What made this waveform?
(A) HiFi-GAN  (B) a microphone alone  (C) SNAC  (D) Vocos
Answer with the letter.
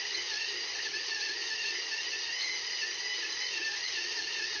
B